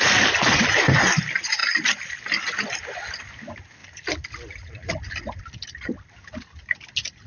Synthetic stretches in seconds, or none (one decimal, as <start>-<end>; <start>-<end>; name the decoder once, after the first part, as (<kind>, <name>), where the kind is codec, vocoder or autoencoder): none

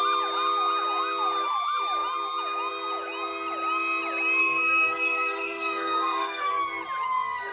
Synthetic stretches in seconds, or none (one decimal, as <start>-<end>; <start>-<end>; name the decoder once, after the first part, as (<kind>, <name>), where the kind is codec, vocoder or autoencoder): 4.4-6.5 (codec, SNAC)

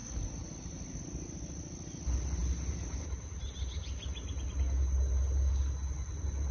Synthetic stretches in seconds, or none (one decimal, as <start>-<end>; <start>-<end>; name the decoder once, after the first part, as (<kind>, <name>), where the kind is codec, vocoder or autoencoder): none

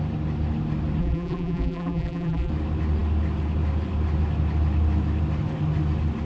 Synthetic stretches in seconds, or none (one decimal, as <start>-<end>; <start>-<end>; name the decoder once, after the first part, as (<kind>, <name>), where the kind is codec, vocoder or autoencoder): 1.0-2.5 (vocoder, BigVGAN v2)

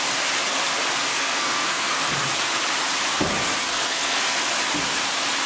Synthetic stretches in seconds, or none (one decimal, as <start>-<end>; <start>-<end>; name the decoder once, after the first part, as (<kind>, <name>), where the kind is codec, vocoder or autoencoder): 1.1-2.1 (codec, SNAC); 3.7-4.4